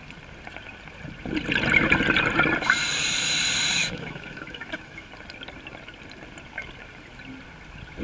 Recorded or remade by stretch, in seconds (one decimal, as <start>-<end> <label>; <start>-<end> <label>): 0.0-3.8 recorded; 3.8-5.1 remade; 5.1-8.0 recorded